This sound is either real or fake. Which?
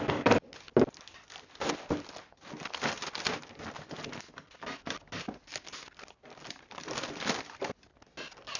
real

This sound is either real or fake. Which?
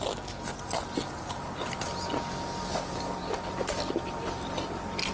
real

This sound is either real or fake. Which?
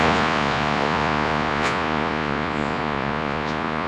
fake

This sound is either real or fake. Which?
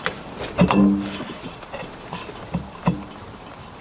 real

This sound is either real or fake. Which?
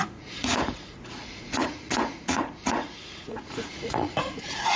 fake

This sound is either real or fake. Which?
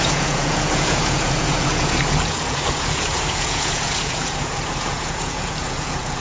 fake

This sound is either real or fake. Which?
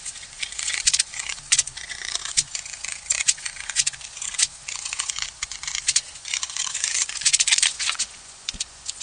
fake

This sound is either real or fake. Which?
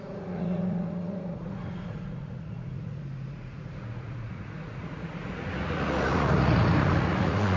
fake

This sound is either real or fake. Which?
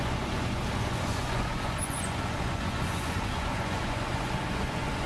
fake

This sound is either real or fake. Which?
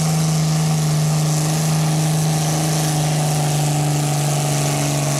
real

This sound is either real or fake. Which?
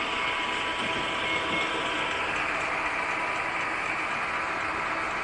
real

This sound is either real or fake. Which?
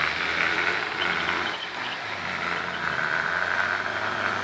real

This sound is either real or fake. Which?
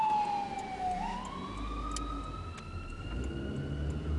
real